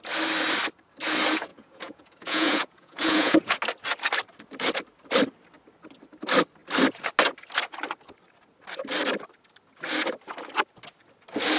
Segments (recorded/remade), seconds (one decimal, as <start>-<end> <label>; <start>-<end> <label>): 0.0-1.5 recorded; 1.5-3.6 remade; 3.6-11.6 recorded